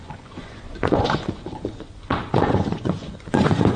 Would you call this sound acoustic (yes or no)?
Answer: no